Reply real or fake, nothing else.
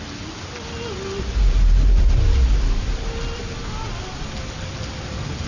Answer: real